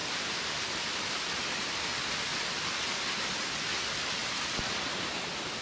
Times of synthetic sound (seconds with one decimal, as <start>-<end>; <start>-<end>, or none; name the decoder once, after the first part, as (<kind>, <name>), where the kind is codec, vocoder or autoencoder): 0.0-0.6 (vocoder, BigVGAN v2); 4.2-4.9